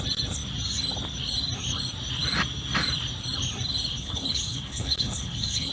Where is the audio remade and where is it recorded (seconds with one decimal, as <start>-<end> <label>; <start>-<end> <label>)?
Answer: 0.0-3.9 recorded; 3.9-5.7 remade

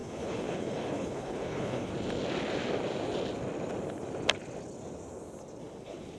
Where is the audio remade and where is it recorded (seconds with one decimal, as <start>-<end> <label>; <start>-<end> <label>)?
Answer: 0.0-1.9 remade; 1.9-5.6 recorded; 5.6-6.2 remade